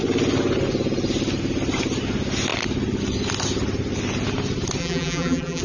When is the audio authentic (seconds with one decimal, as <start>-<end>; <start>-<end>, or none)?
0.0-4.8